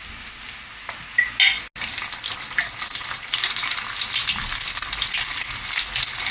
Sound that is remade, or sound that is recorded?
recorded